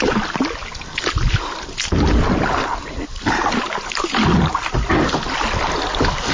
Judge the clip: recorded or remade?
recorded